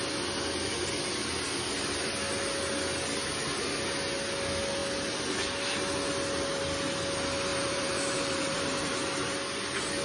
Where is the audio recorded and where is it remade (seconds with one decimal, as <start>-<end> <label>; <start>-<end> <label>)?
0.0-7.5 recorded; 7.5-8.9 remade; 8.9-10.0 recorded